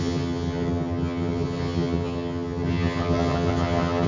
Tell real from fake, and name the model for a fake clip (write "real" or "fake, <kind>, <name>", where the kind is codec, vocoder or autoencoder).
fake, vocoder, HiFi-GAN